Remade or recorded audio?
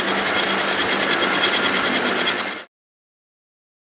recorded